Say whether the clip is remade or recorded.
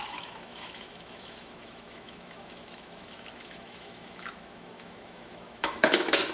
remade